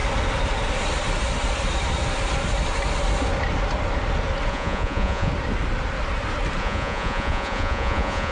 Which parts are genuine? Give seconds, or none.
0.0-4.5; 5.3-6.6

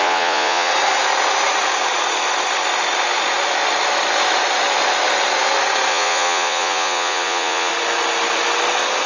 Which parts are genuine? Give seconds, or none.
0.7-5.9; 7.7-9.1

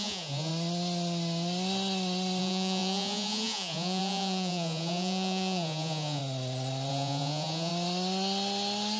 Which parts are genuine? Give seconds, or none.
0.5-2.4; 6.2-6.9; 7.7-9.0

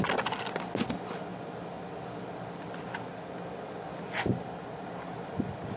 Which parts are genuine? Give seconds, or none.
0.0-5.8